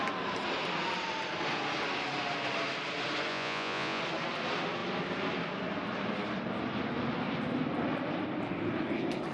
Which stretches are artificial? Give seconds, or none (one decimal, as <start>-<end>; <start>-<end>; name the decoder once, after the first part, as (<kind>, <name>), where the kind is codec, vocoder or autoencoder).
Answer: 3.3-4.0 (vocoder, Vocos)